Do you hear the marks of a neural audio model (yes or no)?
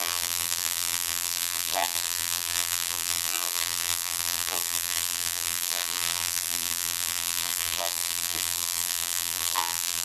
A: yes